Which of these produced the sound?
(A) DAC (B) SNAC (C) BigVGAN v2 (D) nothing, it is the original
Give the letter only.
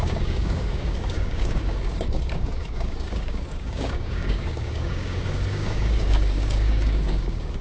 A